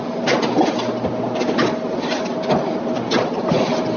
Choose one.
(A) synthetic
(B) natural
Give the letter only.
B